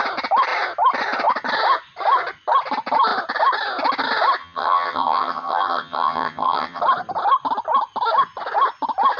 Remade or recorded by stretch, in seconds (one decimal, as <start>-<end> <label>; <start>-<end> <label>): 0.0-4.4 recorded; 4.4-6.8 remade; 6.8-9.2 recorded